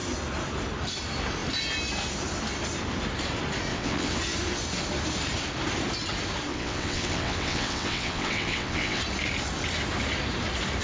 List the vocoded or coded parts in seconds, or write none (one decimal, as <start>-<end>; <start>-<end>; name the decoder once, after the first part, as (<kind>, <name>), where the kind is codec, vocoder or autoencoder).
3.7-4.2 (vocoder, WaveNeXt); 6.5-9.0